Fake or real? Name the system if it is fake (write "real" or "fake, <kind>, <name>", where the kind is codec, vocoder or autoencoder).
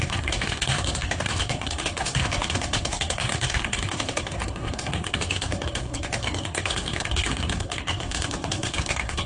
fake, codec, SNAC